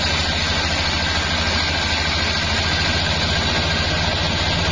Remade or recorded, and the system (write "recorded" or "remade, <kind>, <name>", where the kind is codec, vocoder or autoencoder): recorded